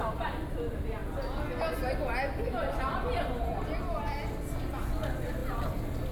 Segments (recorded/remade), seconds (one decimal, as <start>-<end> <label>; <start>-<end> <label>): 0.0-6.1 recorded